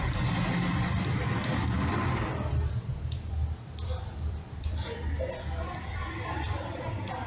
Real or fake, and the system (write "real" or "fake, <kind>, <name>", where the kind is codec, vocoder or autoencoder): fake, vocoder, BigVGAN v2